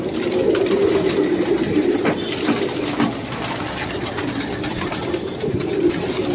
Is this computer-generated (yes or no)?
no